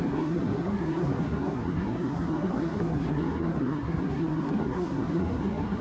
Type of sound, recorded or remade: remade